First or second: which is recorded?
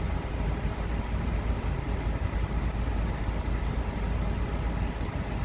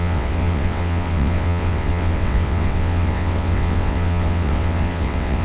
first